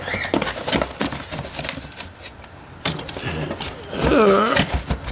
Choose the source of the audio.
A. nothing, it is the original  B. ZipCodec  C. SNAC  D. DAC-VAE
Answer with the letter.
A